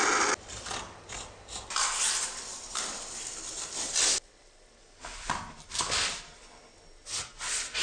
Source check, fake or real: real